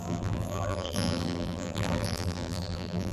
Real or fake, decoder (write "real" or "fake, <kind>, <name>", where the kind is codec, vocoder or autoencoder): fake, vocoder, BigVGAN v2